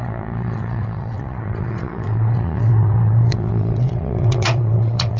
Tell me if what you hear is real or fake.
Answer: fake